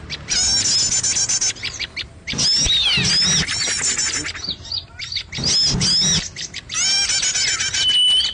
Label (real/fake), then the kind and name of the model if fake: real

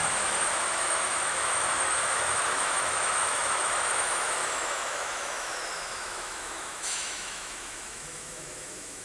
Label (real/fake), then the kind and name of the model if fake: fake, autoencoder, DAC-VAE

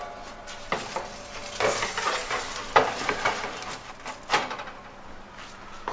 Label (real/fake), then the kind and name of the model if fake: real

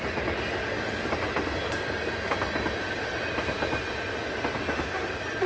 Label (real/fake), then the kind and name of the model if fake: real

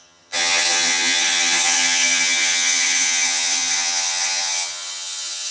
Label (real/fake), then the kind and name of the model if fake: fake, vocoder, HiFi-GAN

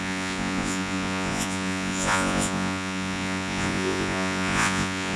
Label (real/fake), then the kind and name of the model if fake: fake, vocoder, Vocos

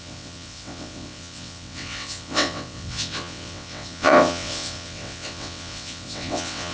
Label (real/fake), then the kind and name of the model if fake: fake, vocoder, WaveNeXt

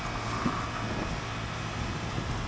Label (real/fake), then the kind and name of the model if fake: real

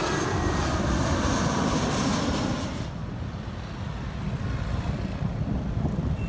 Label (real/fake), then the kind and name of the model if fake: real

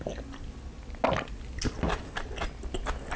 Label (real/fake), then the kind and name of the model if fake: real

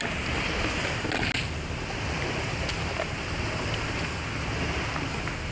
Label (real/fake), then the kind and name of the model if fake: real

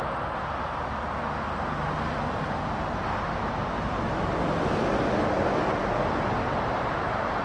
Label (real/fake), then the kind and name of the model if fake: real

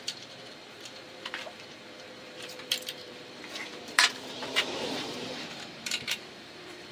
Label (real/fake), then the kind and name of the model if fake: fake, vocoder, BigVGAN v2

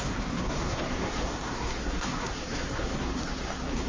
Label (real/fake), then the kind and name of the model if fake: fake, codec, SNAC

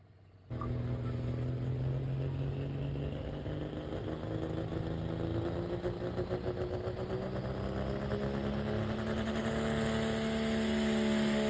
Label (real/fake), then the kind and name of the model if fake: real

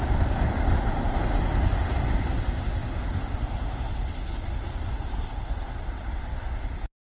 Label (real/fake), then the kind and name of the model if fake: real